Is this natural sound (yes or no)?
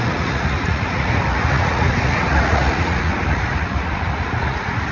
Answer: no